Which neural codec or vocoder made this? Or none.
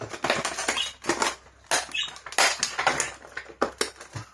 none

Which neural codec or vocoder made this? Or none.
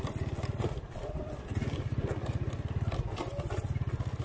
none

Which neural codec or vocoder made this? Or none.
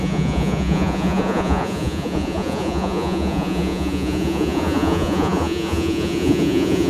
vocoder, Vocos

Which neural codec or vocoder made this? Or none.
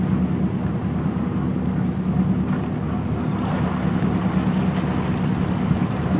none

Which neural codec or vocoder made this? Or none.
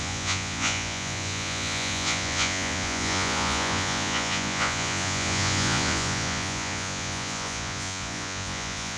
vocoder, Vocos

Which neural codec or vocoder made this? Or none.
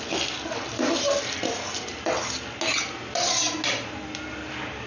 none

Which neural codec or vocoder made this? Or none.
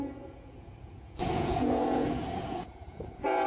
vocoder, Vocos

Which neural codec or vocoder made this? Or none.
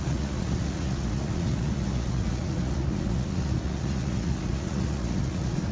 vocoder, Vocos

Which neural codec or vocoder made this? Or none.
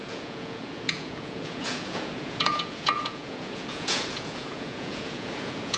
vocoder, Vocos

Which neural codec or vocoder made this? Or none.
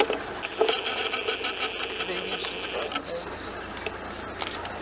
none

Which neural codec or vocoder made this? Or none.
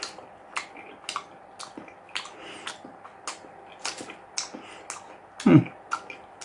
none